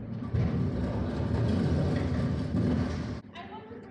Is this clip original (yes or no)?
yes